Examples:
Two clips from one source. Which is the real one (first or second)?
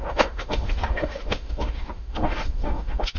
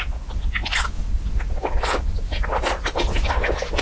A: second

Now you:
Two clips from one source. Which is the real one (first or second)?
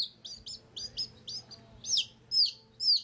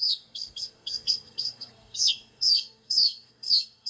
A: first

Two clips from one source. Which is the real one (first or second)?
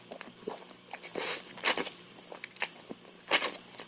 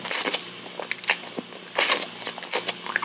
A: second